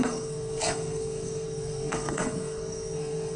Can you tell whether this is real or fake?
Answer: fake